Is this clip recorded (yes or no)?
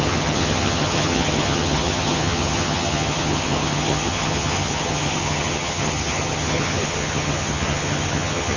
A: no